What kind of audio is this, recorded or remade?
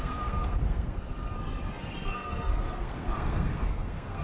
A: remade